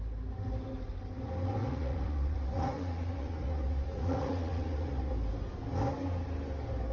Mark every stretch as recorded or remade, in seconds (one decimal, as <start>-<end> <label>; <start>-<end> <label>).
0.0-1.6 recorded; 1.6-5.1 remade; 5.1-6.9 recorded